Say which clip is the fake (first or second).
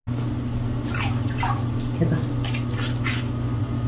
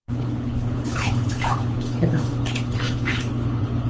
second